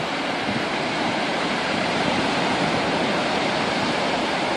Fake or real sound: fake